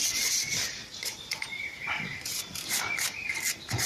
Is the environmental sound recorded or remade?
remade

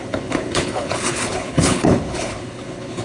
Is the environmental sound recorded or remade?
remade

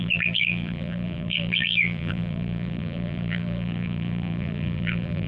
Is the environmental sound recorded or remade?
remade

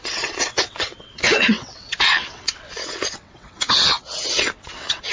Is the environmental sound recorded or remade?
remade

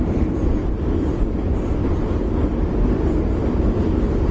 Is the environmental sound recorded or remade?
remade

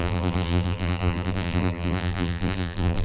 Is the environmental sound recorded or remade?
remade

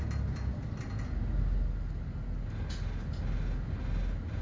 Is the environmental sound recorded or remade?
recorded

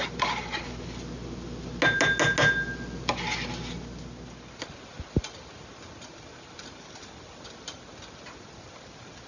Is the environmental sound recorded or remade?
recorded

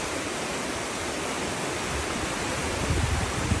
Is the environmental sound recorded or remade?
recorded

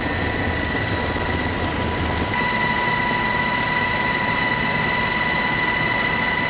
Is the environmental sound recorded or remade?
recorded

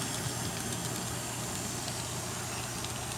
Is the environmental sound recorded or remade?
recorded